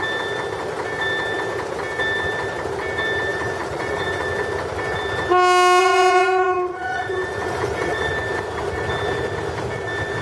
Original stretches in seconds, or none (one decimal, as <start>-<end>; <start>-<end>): 0.0-3.3; 4.3-5.8; 8.1-10.2